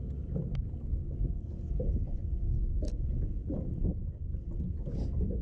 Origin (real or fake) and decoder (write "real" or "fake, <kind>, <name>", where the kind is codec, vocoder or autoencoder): real